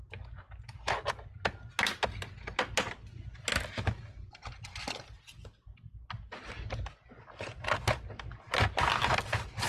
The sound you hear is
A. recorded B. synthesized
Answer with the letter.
A